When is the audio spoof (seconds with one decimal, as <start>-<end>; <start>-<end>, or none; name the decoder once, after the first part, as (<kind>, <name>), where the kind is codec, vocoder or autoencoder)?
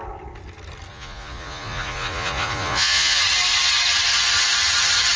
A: 0.9-3.2 (vocoder, Vocos)